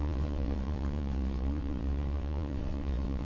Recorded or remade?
remade